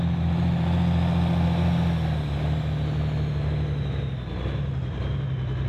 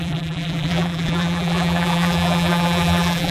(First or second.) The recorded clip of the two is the first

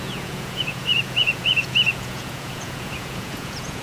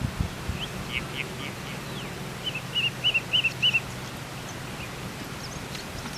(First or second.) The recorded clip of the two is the second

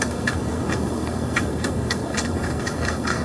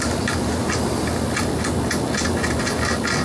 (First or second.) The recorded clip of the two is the second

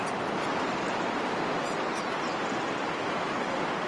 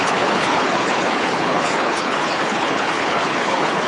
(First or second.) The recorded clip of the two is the first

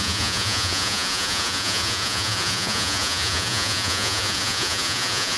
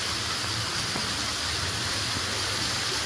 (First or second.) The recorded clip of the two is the second